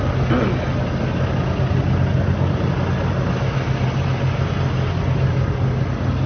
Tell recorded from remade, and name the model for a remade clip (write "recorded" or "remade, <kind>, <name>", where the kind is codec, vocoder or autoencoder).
recorded